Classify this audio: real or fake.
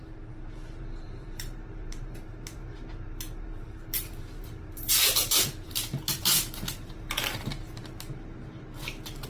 fake